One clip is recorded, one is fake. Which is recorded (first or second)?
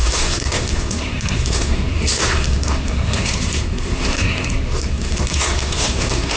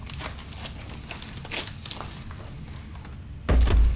second